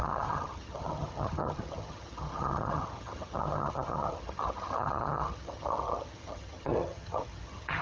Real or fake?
fake